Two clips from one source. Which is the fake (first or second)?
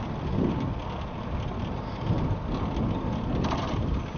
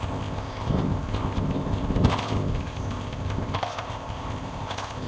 second